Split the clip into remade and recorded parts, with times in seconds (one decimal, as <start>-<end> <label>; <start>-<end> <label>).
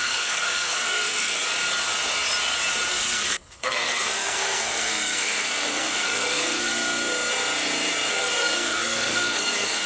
0.0-1.4 remade; 1.4-2.9 recorded; 2.9-6.7 remade; 6.7-8.1 recorded; 8.1-9.9 remade